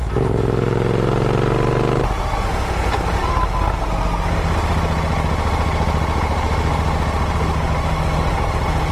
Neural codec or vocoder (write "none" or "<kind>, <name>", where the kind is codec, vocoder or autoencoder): none